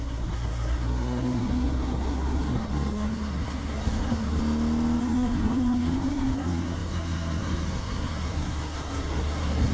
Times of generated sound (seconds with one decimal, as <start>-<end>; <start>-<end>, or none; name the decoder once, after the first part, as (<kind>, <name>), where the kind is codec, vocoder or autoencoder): 0.0-4.4 (codec, SNAC); 5.0-9.7